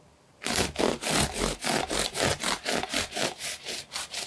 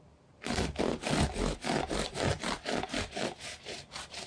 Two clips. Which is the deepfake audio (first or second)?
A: second